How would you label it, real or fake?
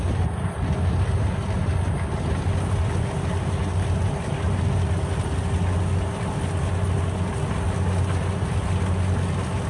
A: real